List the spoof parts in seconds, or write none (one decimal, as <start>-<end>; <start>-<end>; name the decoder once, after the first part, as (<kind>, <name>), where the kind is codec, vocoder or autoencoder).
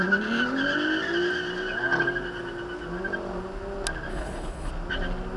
4.1-4.7 (codec, HILCodec)